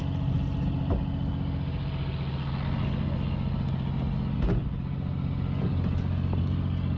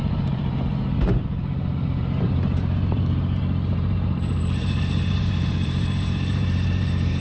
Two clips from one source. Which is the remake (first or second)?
second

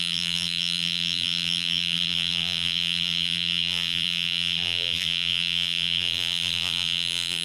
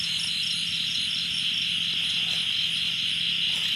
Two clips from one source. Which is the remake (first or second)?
first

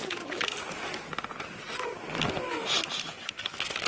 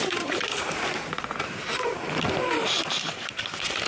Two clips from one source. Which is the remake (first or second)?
second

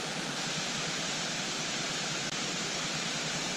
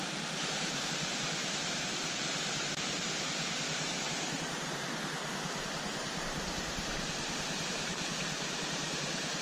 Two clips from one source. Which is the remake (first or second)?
second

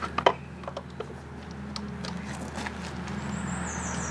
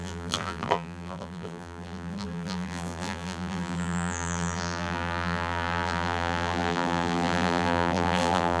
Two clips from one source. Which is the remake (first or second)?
second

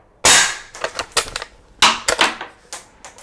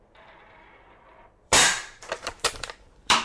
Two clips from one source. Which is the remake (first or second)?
second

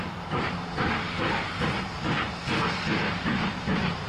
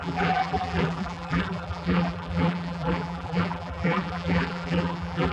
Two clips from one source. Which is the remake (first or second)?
second